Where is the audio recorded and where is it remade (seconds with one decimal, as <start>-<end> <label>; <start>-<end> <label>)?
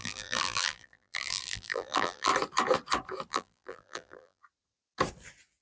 0.0-2.3 remade; 2.3-3.3 recorded; 3.3-4.4 remade; 4.4-5.6 recorded